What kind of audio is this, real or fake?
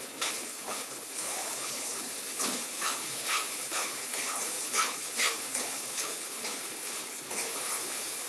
fake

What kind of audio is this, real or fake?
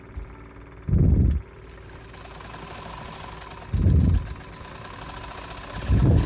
real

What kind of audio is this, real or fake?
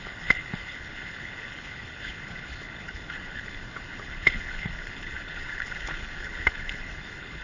fake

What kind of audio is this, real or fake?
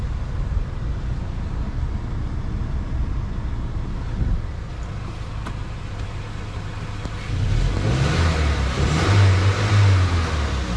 real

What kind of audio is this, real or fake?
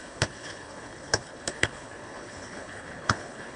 fake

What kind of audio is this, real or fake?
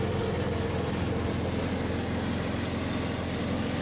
real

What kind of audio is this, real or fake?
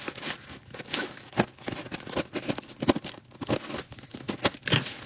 real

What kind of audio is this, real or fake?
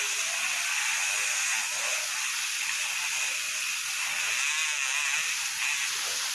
real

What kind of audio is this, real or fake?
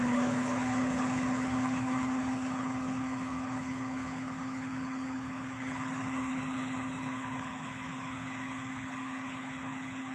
fake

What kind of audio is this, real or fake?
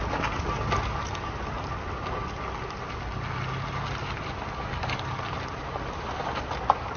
real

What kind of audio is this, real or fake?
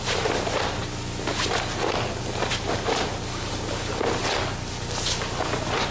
real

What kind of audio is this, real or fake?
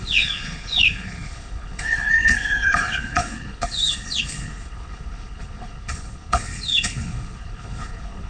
fake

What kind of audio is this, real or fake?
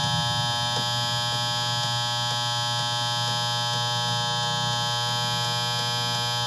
real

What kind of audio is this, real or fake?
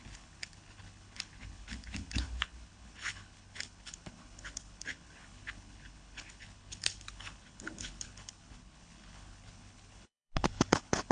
fake